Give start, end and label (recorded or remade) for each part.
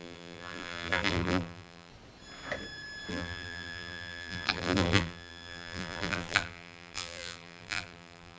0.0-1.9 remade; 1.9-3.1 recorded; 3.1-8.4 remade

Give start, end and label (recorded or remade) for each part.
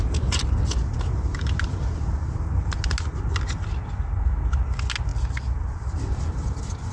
0.0-5.1 recorded; 5.1-6.2 remade; 6.2-6.9 recorded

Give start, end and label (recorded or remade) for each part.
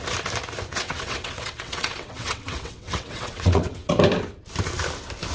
0.0-0.7 recorded; 0.7-3.9 remade; 3.9-5.3 recorded